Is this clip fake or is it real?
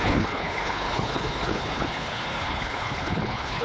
fake